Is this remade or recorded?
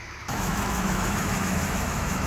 remade